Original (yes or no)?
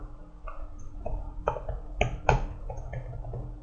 yes